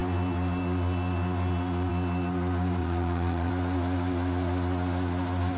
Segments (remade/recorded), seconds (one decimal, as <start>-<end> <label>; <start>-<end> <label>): 0.0-2.8 recorded; 2.8-3.5 remade; 3.5-5.6 recorded